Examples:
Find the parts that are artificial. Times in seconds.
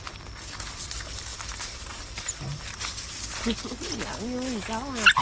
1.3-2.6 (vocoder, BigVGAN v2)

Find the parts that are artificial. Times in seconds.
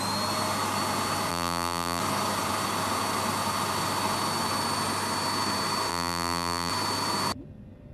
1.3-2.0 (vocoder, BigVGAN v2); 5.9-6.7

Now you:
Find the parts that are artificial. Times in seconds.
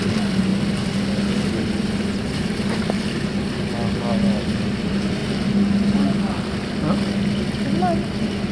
none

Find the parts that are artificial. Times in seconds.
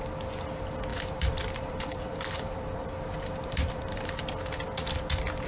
0.9-4.2 (vocoder, BigVGAN v2)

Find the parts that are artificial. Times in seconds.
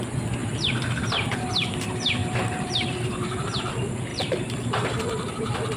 0.4-0.9 (vocoder, BigVGAN v2); 2.2-3.6; 4.1-5.3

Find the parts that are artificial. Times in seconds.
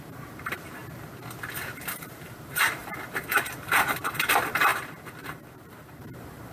0.0-0.8 (vocoder, BigVGAN v2); 2.0-6.5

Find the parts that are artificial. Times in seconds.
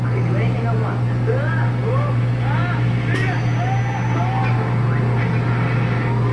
none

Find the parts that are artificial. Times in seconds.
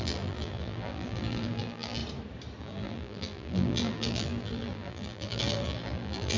0.0-2.0 (vocoder, BigVGAN v2); 2.6-6.4